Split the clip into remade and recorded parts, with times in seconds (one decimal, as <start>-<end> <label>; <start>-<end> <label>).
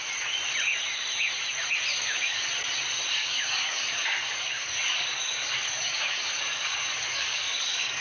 0.0-1.9 recorded; 1.9-2.5 remade; 2.5-3.2 recorded; 3.2-8.0 remade